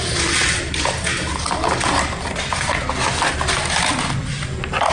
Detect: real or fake real